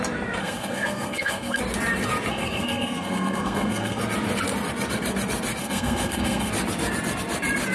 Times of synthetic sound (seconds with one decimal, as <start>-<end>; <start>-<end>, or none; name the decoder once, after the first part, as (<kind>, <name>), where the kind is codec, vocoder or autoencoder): 0.4-1.6 (codec, SNAC); 2.3-4.0; 5.6-6.5